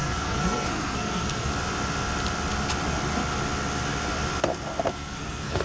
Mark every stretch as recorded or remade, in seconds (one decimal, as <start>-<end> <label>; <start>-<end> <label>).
0.0-1.5 remade; 1.5-4.9 recorded; 4.9-5.6 remade